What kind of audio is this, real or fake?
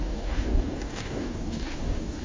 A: fake